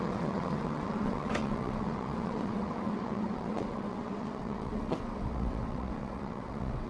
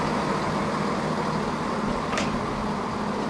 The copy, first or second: first